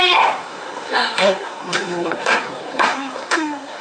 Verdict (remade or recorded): remade